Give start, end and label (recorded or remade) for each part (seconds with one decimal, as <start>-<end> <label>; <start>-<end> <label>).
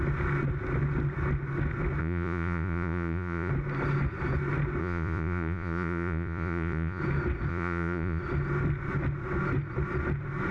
0.0-2.0 recorded; 2.0-3.5 remade; 3.5-4.8 recorded; 4.8-7.0 remade; 7.0-7.5 recorded; 7.5-8.2 remade; 8.2-10.5 recorded